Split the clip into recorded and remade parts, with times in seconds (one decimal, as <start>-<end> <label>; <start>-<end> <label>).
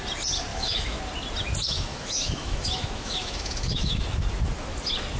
0.0-0.5 recorded; 0.5-1.0 remade; 1.0-1.6 recorded; 1.6-4.0 remade; 4.0-5.2 recorded